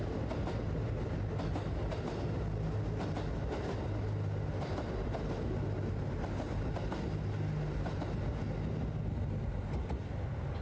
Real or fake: real